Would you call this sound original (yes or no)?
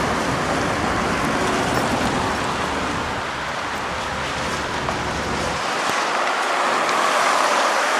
yes